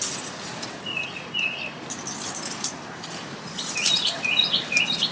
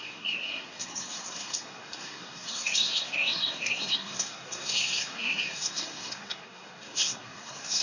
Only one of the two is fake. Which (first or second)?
second